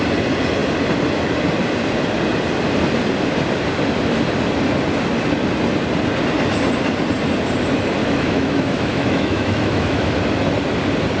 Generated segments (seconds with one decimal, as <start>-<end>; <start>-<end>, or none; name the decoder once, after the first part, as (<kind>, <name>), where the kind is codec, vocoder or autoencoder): 8.0-10.1 (autoencoder, DAC-VAE)